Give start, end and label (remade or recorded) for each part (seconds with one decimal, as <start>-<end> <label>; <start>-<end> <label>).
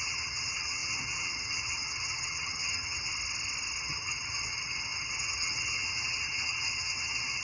0.0-3.1 remade; 3.1-3.8 recorded; 3.8-7.4 remade